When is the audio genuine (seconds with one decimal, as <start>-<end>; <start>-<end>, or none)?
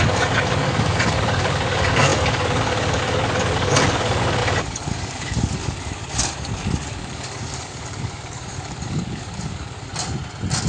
9.9-10.7